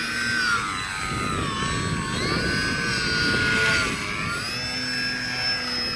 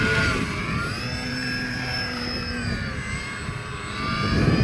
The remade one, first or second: second